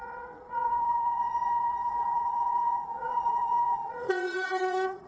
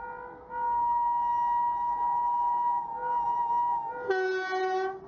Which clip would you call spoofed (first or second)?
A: first